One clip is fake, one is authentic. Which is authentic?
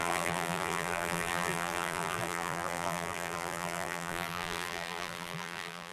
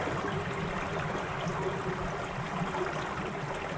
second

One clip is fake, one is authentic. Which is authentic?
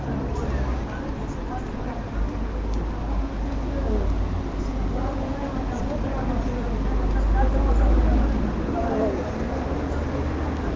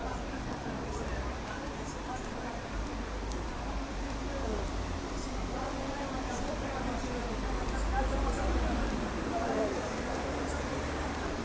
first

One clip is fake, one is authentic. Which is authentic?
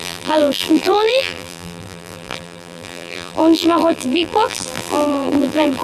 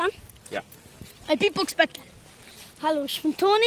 second